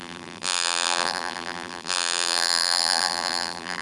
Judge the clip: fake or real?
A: fake